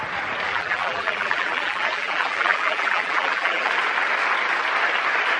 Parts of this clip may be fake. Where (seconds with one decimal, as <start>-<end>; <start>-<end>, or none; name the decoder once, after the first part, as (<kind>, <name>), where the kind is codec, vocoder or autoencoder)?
0.5-3.7 (vocoder, BigVGAN v2)